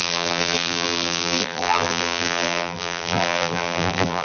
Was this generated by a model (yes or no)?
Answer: yes